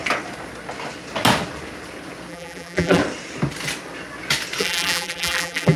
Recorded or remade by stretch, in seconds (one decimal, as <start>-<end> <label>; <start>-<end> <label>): 0.0-2.3 recorded; 2.3-3.0 remade; 3.0-4.6 recorded; 4.6-5.8 remade